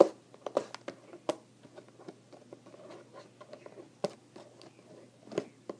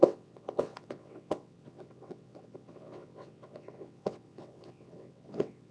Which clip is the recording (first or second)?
first